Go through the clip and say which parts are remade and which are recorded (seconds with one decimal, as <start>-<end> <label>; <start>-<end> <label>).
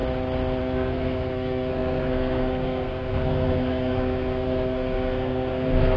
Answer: 0.0-0.6 recorded; 0.6-6.0 remade